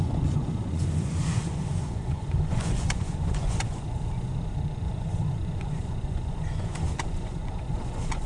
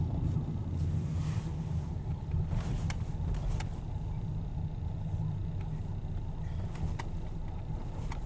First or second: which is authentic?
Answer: second